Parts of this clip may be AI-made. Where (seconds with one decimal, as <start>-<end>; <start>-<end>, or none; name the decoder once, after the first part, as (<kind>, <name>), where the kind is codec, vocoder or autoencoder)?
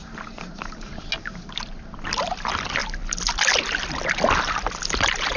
none